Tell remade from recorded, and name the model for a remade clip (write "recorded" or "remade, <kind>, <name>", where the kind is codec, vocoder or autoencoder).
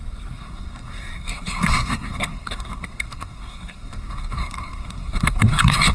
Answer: remade, codec, SNAC